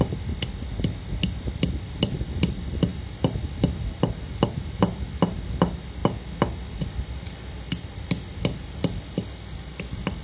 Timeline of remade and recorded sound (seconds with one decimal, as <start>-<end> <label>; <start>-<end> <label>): 0.0-10.2 recorded